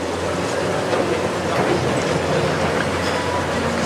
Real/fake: real